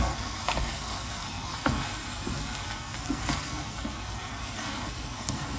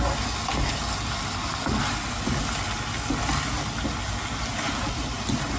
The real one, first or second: second